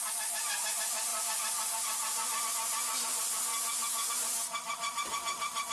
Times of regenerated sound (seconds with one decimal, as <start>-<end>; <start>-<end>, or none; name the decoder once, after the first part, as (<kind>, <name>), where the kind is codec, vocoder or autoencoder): none